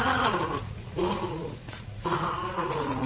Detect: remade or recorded remade